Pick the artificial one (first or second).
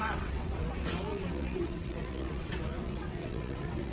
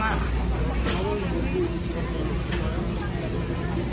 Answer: first